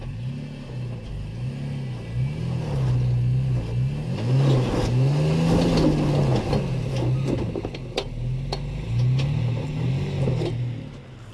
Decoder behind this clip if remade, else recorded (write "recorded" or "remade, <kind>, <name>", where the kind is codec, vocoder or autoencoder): recorded